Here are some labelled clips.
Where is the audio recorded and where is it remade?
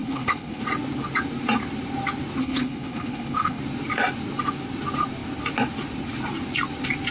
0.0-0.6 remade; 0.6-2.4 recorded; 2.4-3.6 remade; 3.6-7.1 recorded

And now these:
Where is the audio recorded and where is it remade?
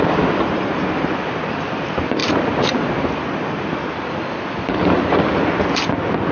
0.0-6.3 recorded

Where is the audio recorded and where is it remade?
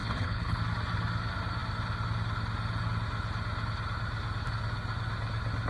0.0-0.6 remade; 0.6-5.7 recorded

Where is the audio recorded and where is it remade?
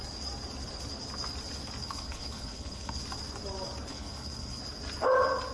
0.0-1.8 recorded; 1.8-3.0 remade; 3.0-3.9 recorded; 3.9-4.6 remade; 4.6-5.5 recorded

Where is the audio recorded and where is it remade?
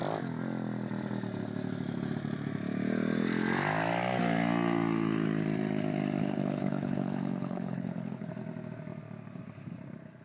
0.0-6.2 recorded; 6.2-8.3 remade; 8.3-10.2 recorded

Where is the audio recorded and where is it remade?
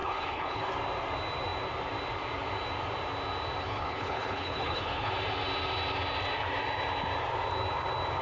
0.0-0.7 remade; 0.7-3.6 recorded; 3.6-5.1 remade; 5.1-8.2 recorded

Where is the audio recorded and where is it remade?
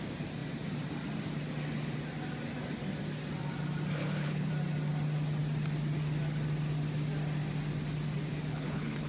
0.0-4.0 recorded; 4.0-4.5 remade; 4.5-8.5 recorded; 8.5-9.1 remade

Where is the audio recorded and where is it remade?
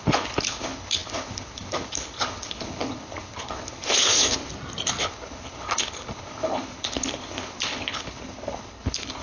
0.0-4.5 remade; 4.5-5.0 recorded; 5.0-9.2 remade